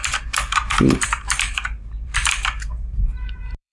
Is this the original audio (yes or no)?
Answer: no